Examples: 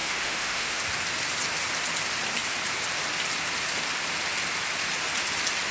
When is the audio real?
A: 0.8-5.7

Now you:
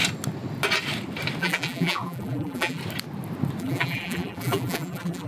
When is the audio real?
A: 0.0-1.4; 2.8-3.6